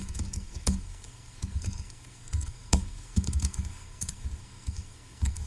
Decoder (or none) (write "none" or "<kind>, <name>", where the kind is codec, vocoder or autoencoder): codec, SNAC